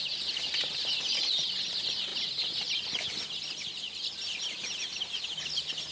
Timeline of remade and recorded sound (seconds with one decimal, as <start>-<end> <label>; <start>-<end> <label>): 0.0-5.9 recorded